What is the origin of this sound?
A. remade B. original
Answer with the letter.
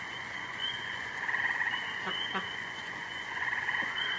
A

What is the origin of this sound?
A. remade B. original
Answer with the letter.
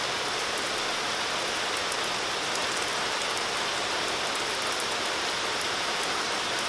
B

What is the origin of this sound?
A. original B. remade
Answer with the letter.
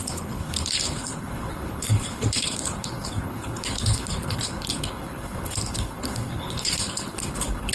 B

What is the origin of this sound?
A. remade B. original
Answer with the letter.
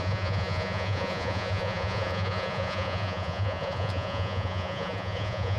A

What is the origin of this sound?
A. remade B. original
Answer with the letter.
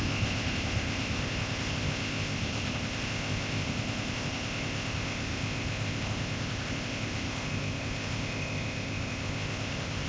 A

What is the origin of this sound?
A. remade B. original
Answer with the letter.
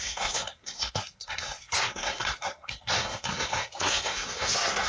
A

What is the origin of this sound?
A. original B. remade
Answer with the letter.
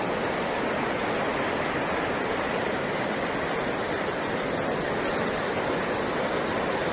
A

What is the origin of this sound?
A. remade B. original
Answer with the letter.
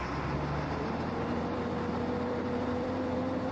A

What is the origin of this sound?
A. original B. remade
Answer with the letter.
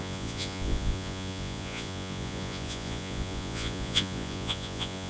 B